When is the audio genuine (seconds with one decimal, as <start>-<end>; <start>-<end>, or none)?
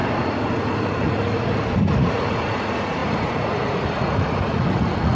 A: none